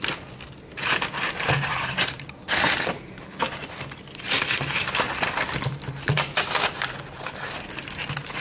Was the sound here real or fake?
real